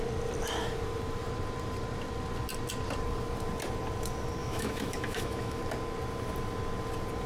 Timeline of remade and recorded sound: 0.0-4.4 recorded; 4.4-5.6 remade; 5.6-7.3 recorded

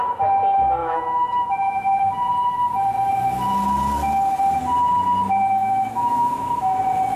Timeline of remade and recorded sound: 0.0-0.8 recorded; 0.8-2.0 remade; 2.0-5.6 recorded; 5.6-6.8 remade; 6.8-7.2 recorded

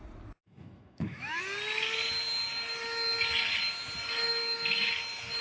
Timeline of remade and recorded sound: 0.0-0.4 recorded; 0.4-1.4 remade; 1.4-5.4 recorded

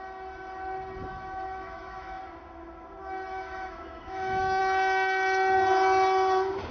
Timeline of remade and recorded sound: 0.0-1.1 recorded; 1.1-2.2 remade; 2.2-3.3 recorded; 3.3-4.6 remade; 4.6-6.7 recorded

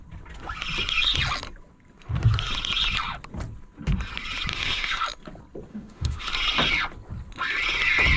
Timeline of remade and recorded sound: 0.0-4.5 recorded; 4.5-5.0 remade; 5.0-5.7 recorded; 5.7-6.3 remade; 6.3-8.2 recorded